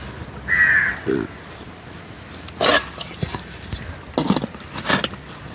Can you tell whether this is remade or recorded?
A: recorded